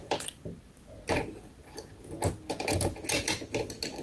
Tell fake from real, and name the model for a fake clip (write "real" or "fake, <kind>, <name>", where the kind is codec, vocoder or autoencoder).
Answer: real